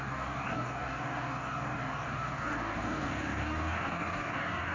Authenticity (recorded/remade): remade